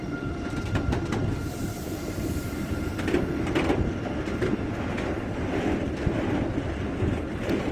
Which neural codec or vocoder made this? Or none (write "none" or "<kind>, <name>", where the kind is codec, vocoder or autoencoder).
vocoder, BigVGAN v2